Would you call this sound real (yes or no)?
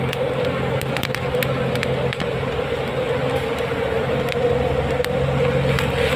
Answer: yes